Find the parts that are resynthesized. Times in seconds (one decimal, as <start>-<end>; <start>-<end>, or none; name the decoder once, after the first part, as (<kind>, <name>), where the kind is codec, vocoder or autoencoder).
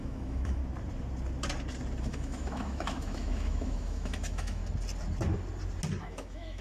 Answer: 0.0-0.6 (autoencoder, DAC-VAE); 2.0-4.6; 6.0-6.6